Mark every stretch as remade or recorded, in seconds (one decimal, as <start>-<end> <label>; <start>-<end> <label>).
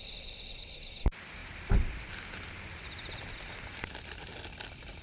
0.0-5.0 recorded